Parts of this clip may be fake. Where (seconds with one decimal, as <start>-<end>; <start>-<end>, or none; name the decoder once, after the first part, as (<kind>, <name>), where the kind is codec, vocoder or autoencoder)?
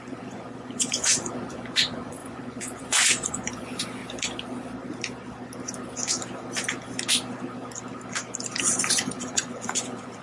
0.0-4.0 (vocoder, Vocos); 8.9-10.2